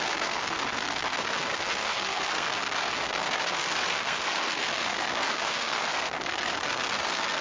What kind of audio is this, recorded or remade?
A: remade